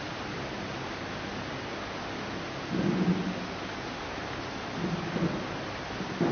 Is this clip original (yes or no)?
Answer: yes